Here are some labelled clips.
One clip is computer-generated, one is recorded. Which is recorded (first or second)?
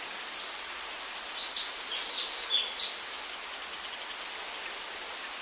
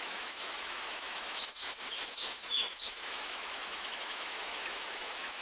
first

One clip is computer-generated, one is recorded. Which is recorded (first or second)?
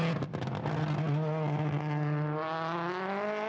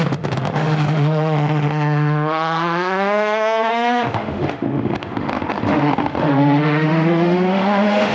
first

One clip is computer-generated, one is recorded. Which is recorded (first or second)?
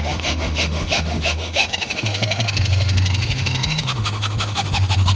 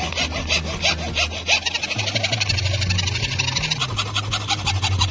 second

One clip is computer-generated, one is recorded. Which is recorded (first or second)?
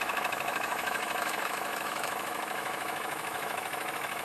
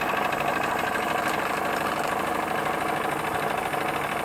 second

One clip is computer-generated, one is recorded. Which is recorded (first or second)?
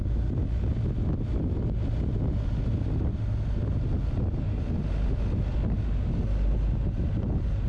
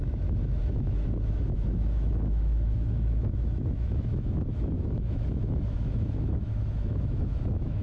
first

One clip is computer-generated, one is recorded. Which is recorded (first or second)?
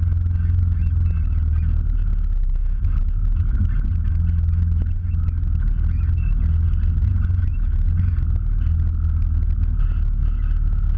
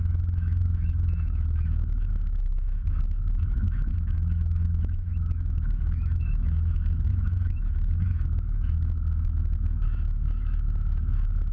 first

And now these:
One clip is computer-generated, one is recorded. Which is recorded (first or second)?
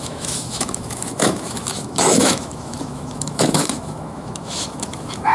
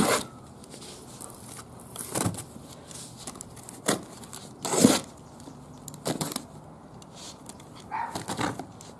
second